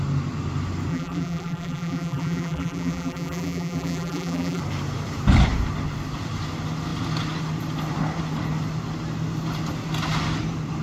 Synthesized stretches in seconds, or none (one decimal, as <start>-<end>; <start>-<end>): 0.9-4.6